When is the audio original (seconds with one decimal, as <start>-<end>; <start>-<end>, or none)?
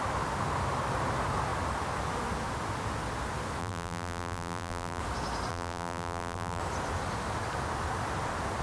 0.0-3.6; 5.0-5.5; 6.6-8.6